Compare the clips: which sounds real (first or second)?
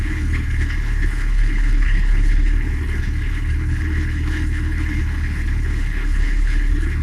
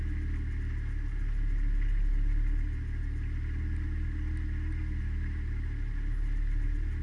second